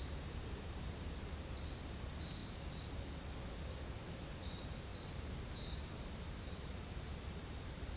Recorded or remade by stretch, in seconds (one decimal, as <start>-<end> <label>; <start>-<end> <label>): 0.0-2.4 remade; 2.4-3.9 recorded; 3.9-8.0 remade

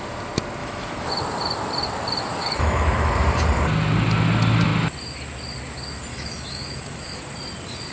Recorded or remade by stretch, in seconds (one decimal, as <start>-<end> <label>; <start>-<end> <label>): 0.0-0.6 recorded; 0.6-1.1 remade; 1.1-2.3 recorded; 2.3-3.1 remade; 3.1-6.1 recorded; 6.1-7.2 remade; 7.2-7.9 recorded

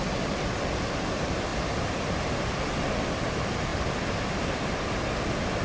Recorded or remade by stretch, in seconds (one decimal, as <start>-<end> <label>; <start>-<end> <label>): 0.0-5.6 recorded

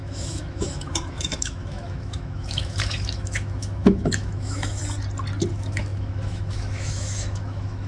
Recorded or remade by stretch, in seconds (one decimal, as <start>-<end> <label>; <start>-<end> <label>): 0.0-4.8 remade; 4.8-5.5 recorded; 5.5-7.9 remade

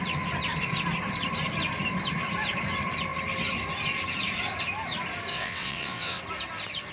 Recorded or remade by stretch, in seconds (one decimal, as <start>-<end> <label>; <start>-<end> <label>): 0.0-5.3 recorded; 5.3-6.2 remade; 6.2-6.9 recorded